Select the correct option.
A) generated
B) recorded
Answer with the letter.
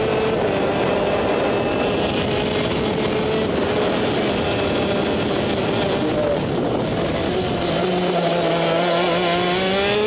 B